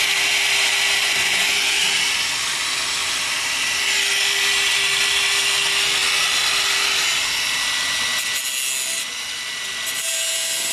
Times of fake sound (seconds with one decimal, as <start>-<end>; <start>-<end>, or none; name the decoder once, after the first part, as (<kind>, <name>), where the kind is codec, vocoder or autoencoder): 1.0-1.8 (vocoder, Vocos)